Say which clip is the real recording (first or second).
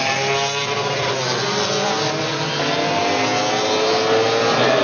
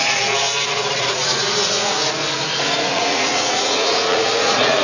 first